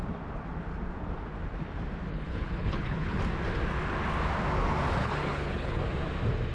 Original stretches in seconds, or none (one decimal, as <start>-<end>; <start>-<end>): 0.0-2.1; 3.2-5.0; 5.8-6.5